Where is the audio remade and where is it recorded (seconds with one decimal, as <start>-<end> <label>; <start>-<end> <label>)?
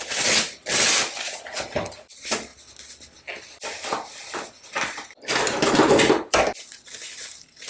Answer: 0.0-7.7 recorded